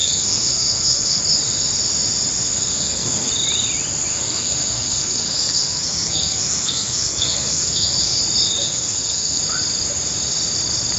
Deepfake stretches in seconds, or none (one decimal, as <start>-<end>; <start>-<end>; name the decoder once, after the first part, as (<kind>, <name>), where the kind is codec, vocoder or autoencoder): 0.0-1.2 (codec, SNAC); 2.7-3.3; 4.1-8.2; 8.6-9.4